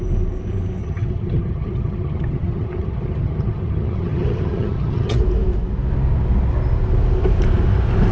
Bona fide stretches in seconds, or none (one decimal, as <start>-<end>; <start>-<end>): 0.0-0.8; 5.2-8.1